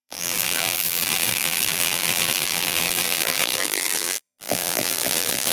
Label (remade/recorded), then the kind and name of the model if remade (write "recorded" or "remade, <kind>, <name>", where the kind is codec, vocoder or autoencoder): remade, vocoder, BigVGAN v2